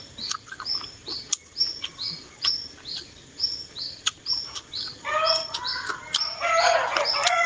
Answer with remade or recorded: recorded